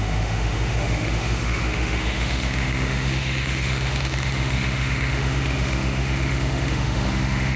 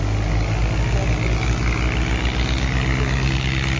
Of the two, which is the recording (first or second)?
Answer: second